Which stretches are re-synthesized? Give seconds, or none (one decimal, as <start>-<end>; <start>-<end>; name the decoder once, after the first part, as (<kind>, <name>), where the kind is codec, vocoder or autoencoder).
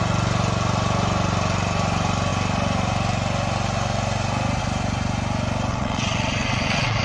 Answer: 5.7-7.0 (vocoder, WaveNeXt)